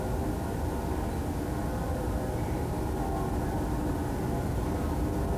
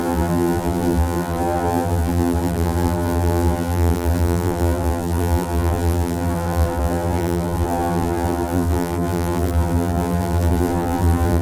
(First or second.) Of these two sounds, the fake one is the second